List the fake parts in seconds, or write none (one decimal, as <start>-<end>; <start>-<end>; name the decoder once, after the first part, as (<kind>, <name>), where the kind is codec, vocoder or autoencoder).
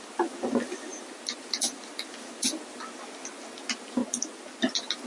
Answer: none